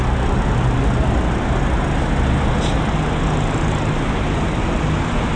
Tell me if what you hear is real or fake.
real